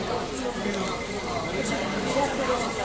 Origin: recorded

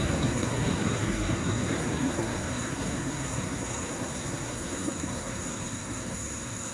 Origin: remade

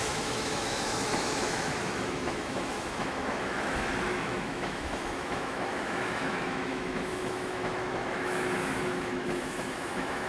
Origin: remade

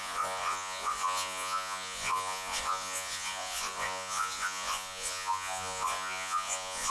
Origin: remade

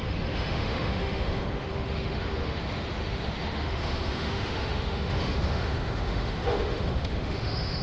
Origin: remade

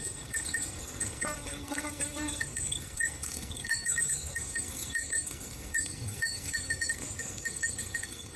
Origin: remade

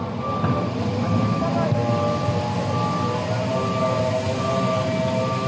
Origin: recorded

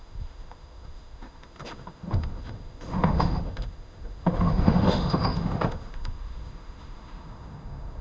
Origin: remade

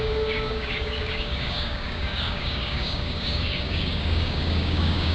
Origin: remade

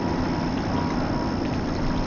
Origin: recorded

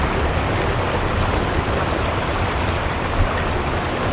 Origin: recorded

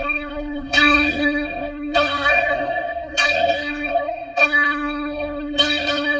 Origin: remade